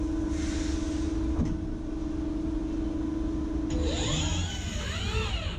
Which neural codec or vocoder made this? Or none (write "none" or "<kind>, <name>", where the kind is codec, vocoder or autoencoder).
none